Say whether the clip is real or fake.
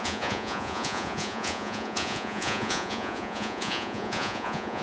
fake